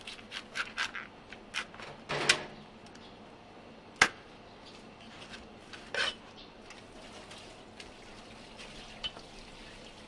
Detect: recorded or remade recorded